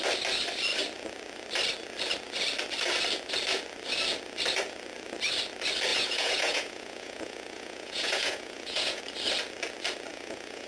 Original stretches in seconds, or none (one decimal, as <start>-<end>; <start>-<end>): 0.0-5.9; 9.0-10.1